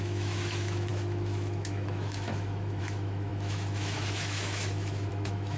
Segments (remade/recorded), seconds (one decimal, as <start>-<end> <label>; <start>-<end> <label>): 0.0-5.6 remade